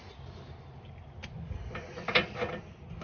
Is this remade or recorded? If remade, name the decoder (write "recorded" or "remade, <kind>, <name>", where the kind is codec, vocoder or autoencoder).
recorded